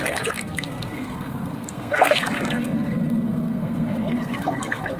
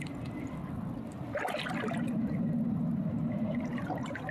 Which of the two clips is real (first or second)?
second